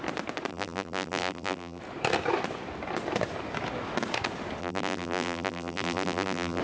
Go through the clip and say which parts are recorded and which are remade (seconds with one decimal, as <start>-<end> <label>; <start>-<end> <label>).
0.0-0.5 recorded; 0.5-1.8 remade; 1.8-4.6 recorded; 4.6-6.6 remade